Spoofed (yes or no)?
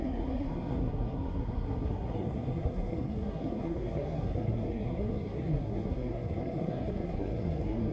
yes